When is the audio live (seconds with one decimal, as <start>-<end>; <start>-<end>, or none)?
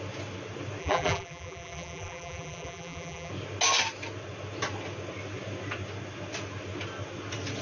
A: 0.0-0.8; 3.3-7.6